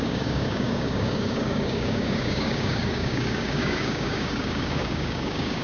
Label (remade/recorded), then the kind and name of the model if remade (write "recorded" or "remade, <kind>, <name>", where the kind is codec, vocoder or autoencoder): remade, codec, DAC